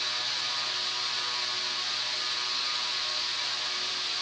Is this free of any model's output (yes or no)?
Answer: yes